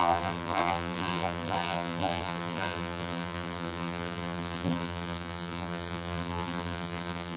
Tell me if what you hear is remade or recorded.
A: remade